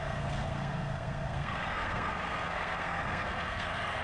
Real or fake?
fake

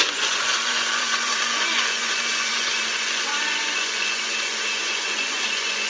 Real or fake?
fake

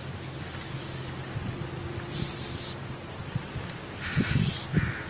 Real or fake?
real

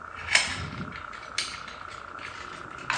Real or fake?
real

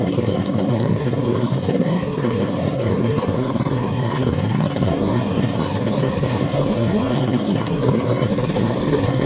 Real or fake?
fake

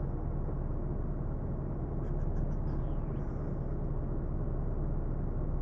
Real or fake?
real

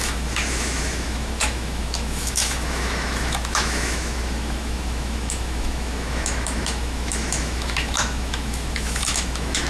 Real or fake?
fake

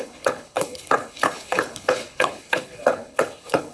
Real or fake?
fake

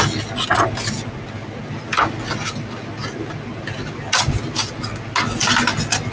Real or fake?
real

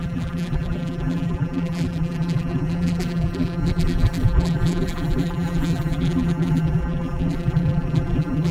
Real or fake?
fake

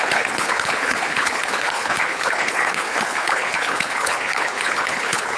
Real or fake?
fake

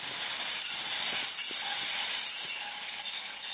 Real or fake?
real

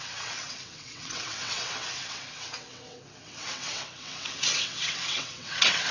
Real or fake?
fake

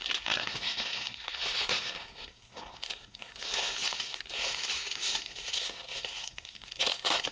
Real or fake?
fake